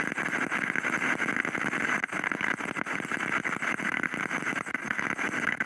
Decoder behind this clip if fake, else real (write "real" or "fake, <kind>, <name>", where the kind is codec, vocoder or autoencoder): real